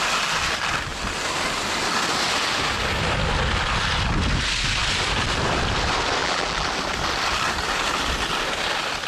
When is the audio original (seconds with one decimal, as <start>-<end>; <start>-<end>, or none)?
0.0-6.2; 6.7-9.1